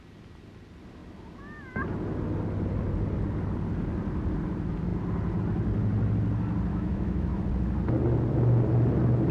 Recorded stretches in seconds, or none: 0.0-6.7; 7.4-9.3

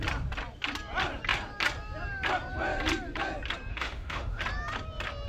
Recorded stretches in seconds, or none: 0.0-3.7; 4.4-5.3

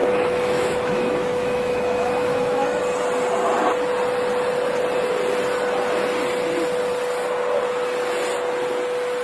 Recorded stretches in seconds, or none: 2.8-9.2

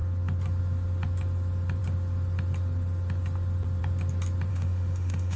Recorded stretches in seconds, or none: 0.0-4.5

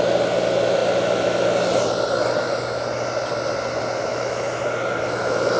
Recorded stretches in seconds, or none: 0.0-4.1; 4.6-5.6

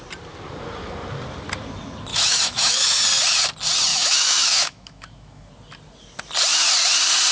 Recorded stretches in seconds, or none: 0.0-2.1; 3.0-3.9; 5.5-7.3

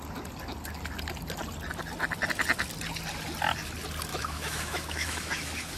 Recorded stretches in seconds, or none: 0.0-4.1